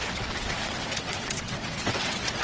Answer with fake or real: fake